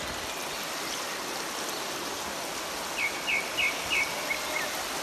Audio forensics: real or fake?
real